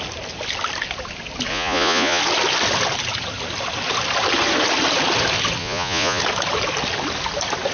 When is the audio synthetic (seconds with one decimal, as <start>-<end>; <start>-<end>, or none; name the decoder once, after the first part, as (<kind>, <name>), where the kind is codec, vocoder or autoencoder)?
1.5-2.2 (vocoder, Vocos); 5.6-6.2